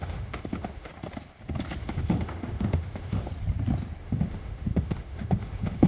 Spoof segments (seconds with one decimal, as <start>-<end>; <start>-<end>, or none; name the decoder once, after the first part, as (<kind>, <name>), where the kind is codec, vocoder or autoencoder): 0.0-0.9 (autoencoder, DAC-VAE); 1.8-3.3; 4.0-5.9